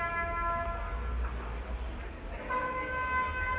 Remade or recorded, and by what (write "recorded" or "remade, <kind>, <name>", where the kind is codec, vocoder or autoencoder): recorded